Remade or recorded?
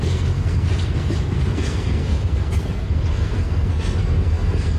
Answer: remade